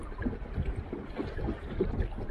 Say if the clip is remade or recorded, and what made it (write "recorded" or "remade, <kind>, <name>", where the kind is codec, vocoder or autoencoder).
recorded